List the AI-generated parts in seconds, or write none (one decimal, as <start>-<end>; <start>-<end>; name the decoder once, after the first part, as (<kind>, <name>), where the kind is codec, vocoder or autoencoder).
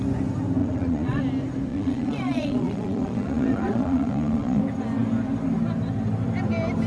0.6-1.2 (vocoder, Vocos); 1.7-4.6